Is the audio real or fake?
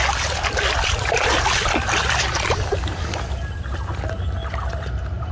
real